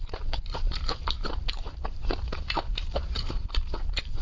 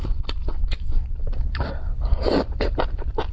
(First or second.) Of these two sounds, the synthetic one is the first